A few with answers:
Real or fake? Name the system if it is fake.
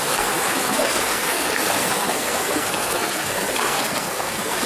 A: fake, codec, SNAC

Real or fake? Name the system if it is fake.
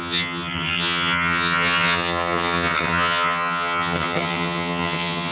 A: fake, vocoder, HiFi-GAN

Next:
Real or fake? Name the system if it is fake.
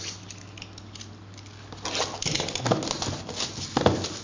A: real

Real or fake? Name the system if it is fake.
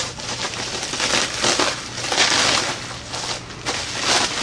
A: real